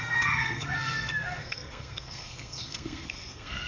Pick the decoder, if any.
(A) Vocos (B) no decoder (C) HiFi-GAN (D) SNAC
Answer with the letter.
D